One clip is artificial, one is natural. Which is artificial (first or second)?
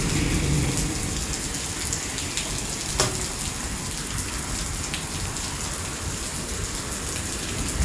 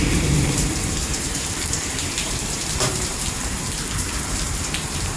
second